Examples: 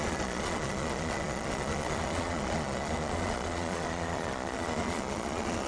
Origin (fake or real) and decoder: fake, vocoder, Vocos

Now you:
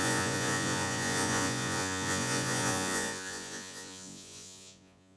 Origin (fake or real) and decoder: fake, vocoder, Vocos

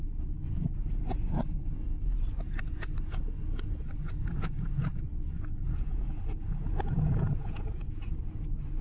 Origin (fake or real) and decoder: fake, vocoder, Vocos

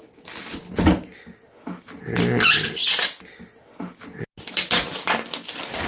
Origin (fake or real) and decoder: real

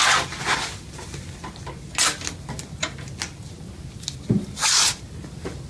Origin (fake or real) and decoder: real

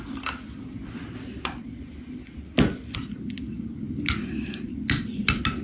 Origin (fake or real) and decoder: real